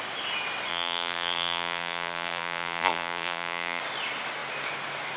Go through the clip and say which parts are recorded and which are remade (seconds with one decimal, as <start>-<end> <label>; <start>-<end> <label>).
0.0-0.7 recorded; 0.7-3.8 remade; 3.8-5.2 recorded